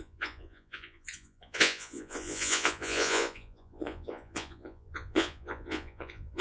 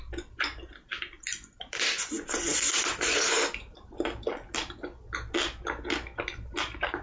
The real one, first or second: second